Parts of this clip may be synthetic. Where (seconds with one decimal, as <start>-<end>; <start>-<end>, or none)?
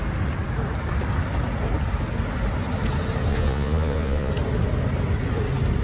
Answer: 3.3-4.3